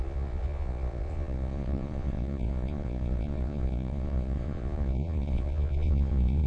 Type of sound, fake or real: fake